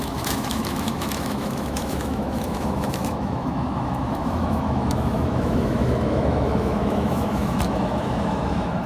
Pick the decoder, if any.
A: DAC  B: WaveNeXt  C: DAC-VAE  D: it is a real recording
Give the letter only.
C